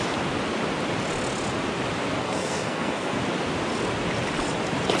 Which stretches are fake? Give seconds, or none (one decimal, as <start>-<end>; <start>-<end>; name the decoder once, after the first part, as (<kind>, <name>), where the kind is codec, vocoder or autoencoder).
2.2-3.2 (codec, SNAC)